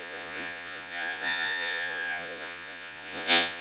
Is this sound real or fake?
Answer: fake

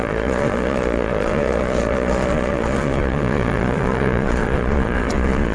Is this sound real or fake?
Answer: fake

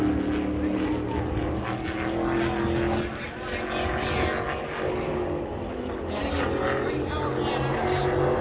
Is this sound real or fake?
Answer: real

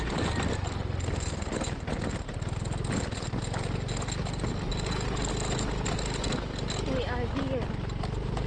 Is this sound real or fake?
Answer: real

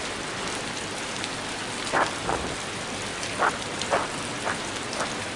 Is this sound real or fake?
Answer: real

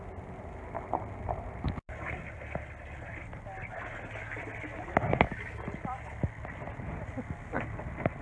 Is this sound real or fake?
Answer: real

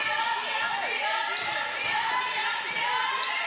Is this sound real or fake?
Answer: real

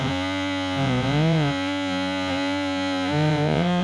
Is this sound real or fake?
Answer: fake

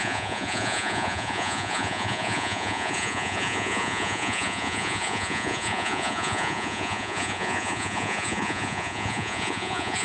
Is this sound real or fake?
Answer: fake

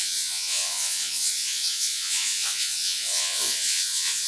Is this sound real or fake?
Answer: fake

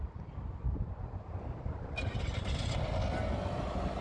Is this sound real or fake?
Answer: real